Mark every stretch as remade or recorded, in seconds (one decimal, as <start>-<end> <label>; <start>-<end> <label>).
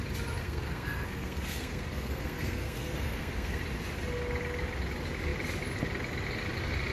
0.0-0.4 recorded; 0.4-3.6 remade; 3.6-6.9 recorded